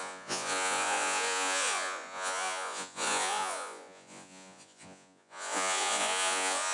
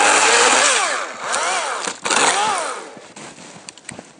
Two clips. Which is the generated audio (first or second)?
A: first